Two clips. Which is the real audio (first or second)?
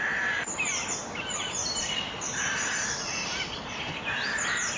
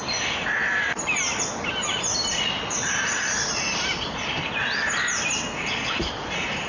second